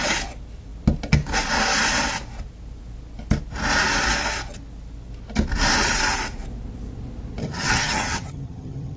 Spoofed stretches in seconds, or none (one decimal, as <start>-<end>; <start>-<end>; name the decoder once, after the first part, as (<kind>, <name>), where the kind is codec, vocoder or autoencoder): 7.4-9.0 (vocoder, HiFi-GAN)